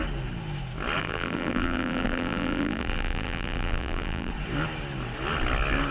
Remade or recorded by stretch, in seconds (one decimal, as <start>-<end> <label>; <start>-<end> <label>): 0.0-1.0 recorded; 1.0-4.3 remade; 4.3-5.9 recorded